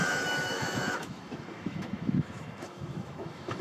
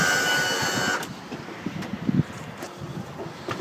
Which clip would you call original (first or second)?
second